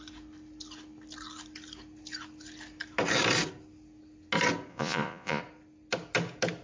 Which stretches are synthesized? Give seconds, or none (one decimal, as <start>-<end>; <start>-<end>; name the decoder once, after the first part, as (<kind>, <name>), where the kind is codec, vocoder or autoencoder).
4.7-5.4 (vocoder, Vocos)